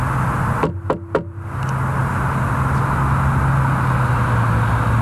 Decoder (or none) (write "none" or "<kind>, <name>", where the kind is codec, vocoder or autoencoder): none